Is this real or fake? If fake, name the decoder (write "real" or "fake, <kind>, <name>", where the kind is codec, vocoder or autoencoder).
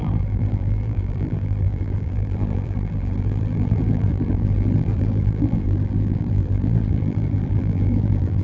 fake, vocoder, BigVGAN v2